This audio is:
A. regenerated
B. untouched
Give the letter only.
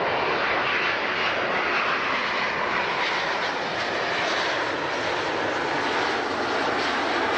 B